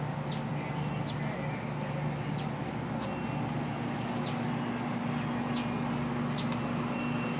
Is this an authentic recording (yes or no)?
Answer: yes